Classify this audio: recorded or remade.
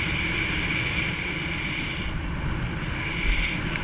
recorded